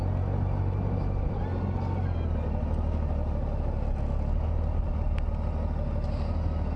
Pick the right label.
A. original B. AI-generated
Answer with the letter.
A